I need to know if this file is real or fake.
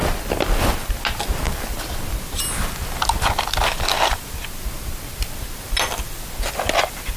real